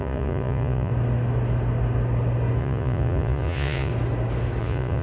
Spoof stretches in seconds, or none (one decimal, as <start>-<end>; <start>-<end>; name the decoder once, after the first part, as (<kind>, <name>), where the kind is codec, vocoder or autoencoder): 0.0-0.9 (vocoder, Vocos); 2.6-3.9; 4.6-5.0